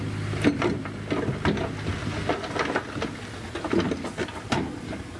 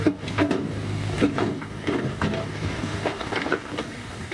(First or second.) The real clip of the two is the first